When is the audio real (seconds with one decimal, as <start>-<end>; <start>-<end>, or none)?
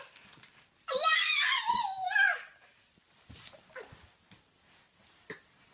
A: 0.0-5.7